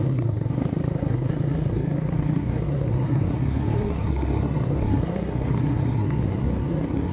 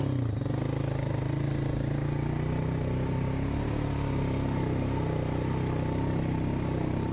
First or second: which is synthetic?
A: first